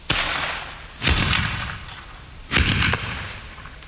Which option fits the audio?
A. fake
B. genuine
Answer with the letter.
B